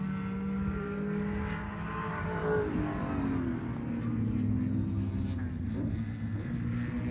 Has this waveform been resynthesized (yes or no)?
no